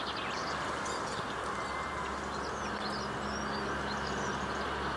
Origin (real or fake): real